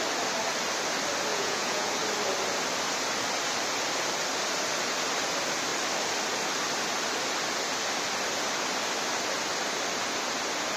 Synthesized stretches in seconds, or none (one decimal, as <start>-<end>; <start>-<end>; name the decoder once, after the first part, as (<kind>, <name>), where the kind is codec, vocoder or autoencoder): 1.3-1.9 (vocoder, Vocos)